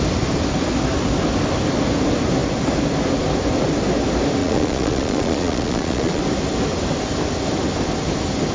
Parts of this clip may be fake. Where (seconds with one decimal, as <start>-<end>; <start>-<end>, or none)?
4.4-6.2